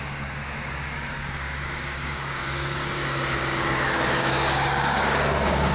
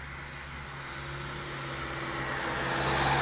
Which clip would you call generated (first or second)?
first